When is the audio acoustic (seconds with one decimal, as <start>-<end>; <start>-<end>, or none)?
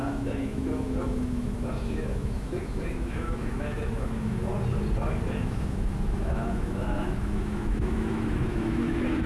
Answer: 4.5-5.4